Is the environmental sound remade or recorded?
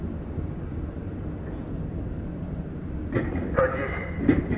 recorded